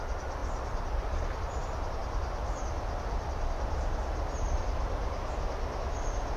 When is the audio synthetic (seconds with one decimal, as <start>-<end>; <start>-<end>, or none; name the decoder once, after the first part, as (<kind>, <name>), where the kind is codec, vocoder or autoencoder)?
none